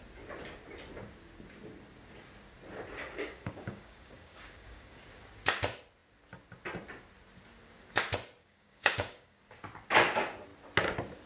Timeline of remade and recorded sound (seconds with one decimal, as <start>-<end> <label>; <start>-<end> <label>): 0.0-3.0 recorded; 3.0-5.0 remade; 5.0-8.4 recorded; 8.4-9.4 remade; 9.4-11.3 recorded